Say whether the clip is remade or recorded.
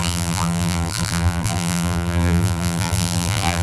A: remade